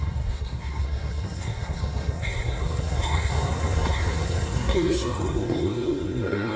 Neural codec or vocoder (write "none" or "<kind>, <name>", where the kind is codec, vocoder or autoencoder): codec, SNAC